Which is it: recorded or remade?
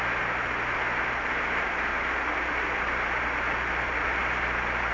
recorded